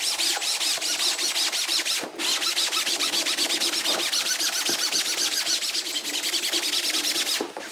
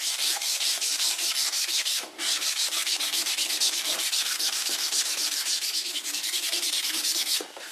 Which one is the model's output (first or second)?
second